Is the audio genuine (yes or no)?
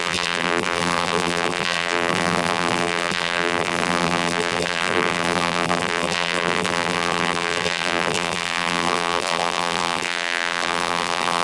no